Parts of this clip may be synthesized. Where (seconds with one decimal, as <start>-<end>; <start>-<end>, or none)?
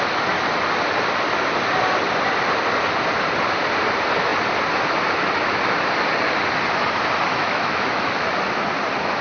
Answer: 7.3-8.3